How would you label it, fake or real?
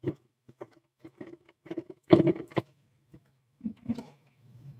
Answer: fake